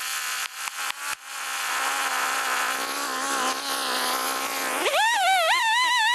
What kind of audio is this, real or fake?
real